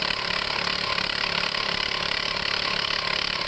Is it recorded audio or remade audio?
remade